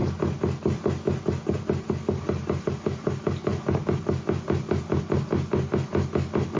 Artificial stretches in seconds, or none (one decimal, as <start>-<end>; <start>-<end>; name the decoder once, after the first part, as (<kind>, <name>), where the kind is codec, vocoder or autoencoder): none